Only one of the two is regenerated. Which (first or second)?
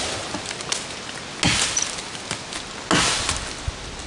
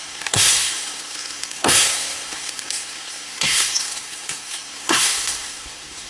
second